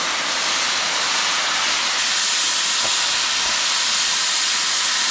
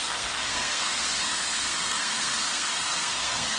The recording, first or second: first